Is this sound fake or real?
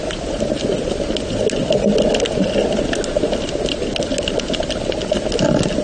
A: real